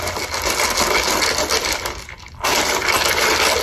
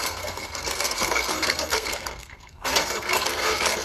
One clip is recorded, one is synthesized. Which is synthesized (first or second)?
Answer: second